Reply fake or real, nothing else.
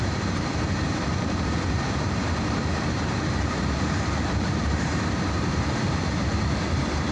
fake